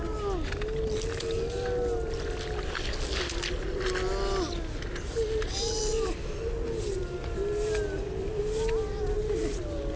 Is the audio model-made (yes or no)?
no